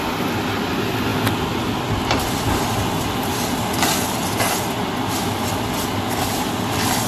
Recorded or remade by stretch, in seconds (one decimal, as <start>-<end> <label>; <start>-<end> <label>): 0.0-7.1 recorded